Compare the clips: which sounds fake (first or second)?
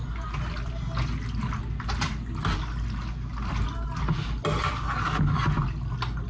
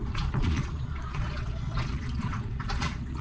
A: second